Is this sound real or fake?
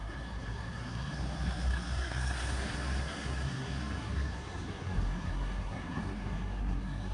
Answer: fake